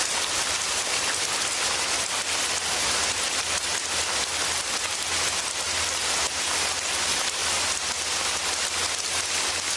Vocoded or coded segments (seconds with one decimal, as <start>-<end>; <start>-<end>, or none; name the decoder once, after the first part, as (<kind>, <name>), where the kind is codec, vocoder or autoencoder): none

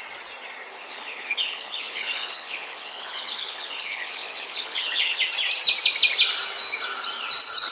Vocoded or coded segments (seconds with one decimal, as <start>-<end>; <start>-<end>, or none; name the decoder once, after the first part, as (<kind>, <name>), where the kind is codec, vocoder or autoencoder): 0.7-5.2 (codec, HILCodec)